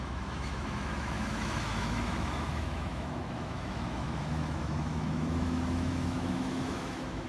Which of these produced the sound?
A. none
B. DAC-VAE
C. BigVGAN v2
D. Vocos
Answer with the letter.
B